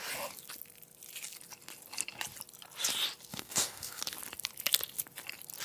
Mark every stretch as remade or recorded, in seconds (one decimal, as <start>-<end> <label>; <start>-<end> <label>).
0.0-3.3 recorded; 3.3-4.0 remade; 4.0-5.6 recorded